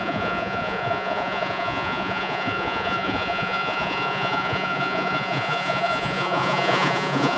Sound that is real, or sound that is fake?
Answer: fake